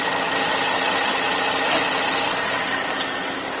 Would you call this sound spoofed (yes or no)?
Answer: no